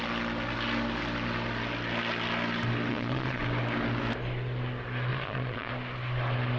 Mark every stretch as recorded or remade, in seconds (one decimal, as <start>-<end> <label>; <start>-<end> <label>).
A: 0.0-2.9 recorded; 2.9-3.4 remade; 3.4-5.1 recorded; 5.1-5.7 remade; 5.7-6.6 recorded